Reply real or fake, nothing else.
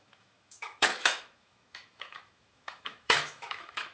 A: fake